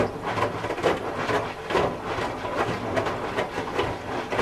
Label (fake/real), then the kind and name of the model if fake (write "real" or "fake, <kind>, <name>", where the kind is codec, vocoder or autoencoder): real